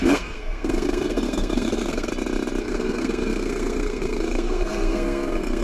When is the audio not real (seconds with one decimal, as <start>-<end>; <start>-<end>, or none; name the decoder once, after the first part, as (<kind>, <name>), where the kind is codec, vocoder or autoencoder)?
0.0-2.1 (codec, SNAC); 2.6-5.6